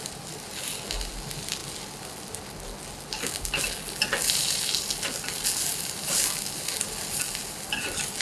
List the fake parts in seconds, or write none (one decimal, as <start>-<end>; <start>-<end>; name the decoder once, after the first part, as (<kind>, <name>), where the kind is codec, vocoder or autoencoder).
none